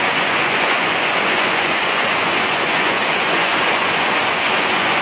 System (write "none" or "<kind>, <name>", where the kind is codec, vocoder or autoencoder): vocoder, Vocos